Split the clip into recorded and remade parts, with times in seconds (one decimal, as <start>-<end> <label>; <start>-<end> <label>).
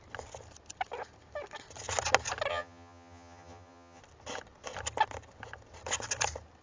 0.0-2.5 recorded; 2.5-4.0 remade; 4.0-6.6 recorded